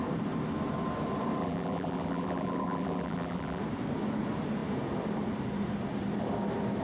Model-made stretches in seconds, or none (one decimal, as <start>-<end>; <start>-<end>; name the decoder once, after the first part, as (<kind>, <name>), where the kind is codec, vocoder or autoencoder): 1.4-3.6 (vocoder, BigVGAN v2)